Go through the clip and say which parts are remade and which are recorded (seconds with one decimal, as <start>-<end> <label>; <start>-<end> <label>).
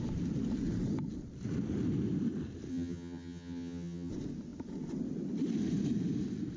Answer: 0.0-2.7 recorded; 2.7-4.1 remade; 4.1-6.6 recorded